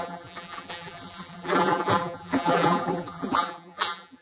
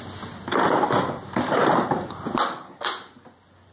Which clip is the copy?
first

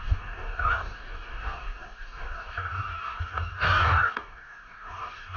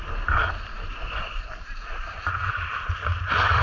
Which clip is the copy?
first